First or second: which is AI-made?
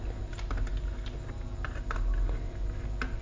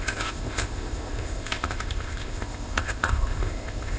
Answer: second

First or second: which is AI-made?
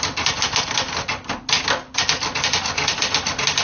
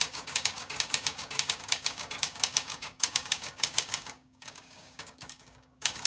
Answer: second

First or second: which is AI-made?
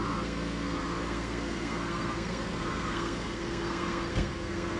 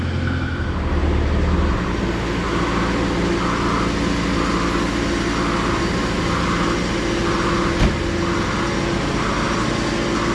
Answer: first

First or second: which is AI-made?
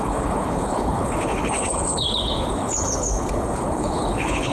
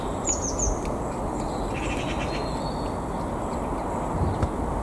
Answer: first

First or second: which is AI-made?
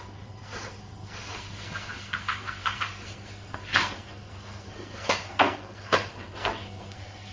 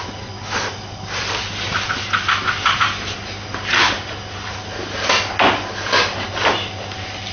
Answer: first